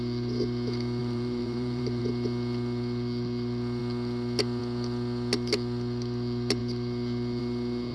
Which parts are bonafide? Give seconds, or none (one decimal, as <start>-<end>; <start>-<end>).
0.0-1.0; 2.0-7.9